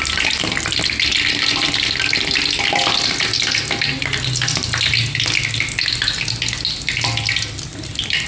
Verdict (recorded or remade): recorded